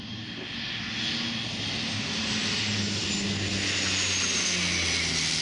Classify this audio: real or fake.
real